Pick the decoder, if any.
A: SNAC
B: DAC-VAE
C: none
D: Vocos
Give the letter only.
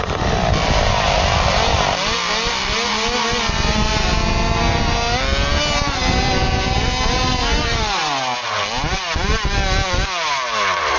C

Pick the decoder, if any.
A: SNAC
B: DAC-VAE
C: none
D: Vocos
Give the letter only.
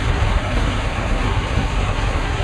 A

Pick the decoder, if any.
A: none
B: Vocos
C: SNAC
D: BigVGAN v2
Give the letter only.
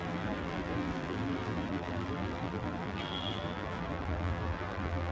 D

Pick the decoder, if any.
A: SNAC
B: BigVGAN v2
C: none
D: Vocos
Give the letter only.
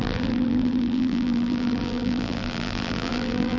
B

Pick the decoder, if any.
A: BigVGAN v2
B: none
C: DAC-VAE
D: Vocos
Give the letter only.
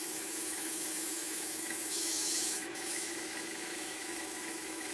C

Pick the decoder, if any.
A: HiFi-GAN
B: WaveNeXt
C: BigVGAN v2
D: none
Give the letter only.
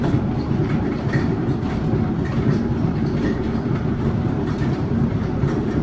C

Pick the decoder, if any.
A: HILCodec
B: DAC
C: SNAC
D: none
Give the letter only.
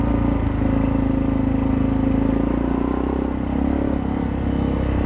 D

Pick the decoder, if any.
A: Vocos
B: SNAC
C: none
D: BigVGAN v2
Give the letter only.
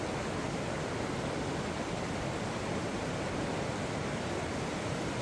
C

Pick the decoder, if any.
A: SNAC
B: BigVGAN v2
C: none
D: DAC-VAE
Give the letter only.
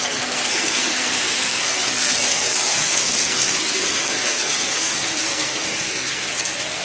A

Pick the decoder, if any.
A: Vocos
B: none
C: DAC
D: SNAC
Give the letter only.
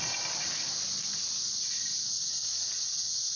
B